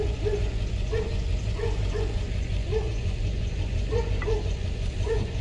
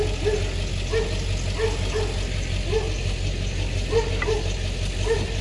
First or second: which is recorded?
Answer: second